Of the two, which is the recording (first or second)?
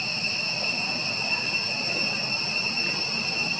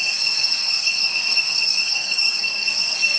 first